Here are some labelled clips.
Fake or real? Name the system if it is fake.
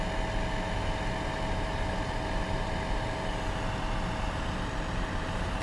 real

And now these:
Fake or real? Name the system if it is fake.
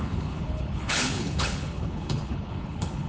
fake, codec, HILCodec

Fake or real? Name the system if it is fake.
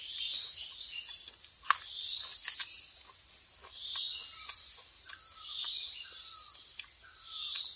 real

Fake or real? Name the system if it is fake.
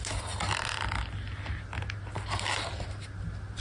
real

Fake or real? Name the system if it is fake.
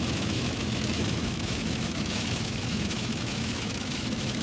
fake, autoencoder, DAC-VAE